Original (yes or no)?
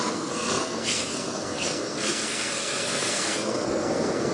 no